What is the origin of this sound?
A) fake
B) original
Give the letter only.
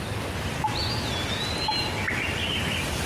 B